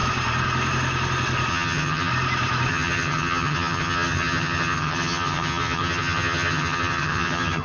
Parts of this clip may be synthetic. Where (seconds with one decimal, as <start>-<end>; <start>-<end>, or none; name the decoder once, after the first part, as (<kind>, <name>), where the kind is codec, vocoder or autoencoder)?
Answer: 1.5-2.1 (vocoder, HiFi-GAN); 2.7-7.6